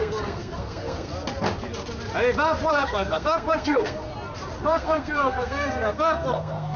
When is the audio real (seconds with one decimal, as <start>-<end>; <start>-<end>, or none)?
1.1-2.7; 4.1-4.6